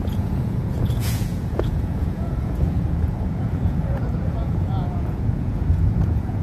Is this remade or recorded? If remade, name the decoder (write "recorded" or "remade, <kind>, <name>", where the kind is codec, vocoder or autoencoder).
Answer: remade, vocoder, Vocos